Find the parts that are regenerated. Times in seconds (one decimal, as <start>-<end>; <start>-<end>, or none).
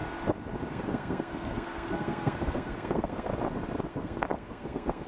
0.7-3.3; 3.9-5.1